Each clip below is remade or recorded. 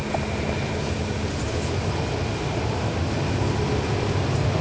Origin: recorded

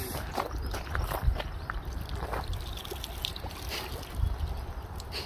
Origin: recorded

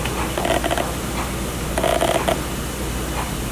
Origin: recorded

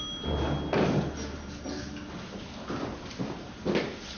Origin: recorded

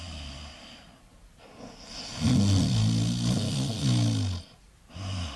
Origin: recorded